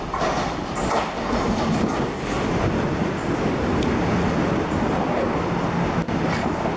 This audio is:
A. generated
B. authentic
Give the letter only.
B